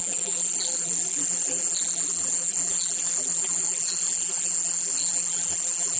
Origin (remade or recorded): remade